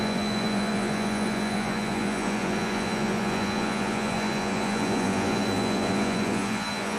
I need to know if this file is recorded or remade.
remade